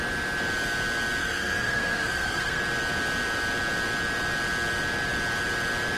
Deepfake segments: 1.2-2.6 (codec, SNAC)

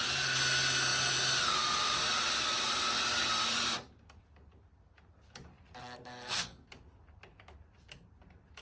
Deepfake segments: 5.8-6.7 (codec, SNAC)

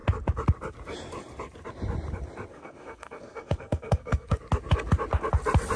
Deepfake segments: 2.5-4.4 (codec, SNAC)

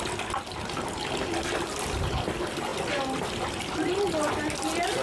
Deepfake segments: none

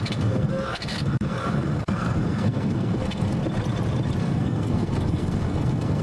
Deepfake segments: 0.0-3.4 (codec, SNAC); 4.2-6.0

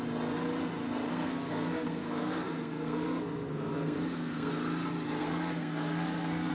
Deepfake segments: 1.1-4.5 (codec, SNAC); 5.2-6.5

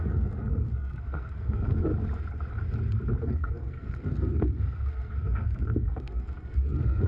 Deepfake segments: 0.0-1.9 (codec, SNAC); 3.2-7.1